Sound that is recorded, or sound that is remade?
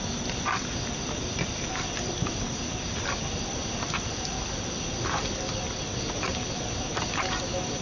recorded